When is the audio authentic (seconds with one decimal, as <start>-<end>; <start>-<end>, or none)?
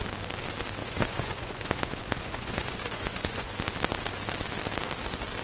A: 0.0-0.8; 3.5-5.4